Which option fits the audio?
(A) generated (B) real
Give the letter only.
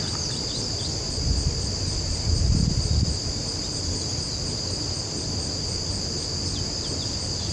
B